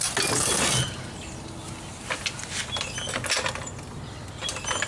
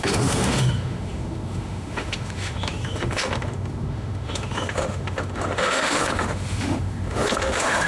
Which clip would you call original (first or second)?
first